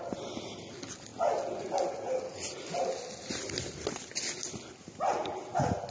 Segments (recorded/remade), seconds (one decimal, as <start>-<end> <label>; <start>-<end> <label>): 0.0-5.9 recorded